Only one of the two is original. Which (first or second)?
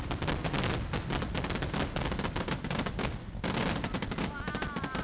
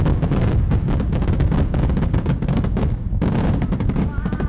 first